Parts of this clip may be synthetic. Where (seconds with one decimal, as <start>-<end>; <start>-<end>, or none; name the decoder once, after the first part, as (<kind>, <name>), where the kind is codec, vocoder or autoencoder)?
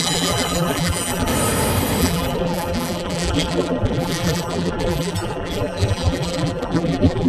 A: 0.0-1.3 (vocoder, BigVGAN v2); 2.0-7.3